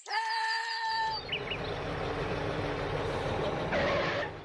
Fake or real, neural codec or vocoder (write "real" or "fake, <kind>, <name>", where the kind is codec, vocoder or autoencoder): fake, vocoder, BigVGAN v2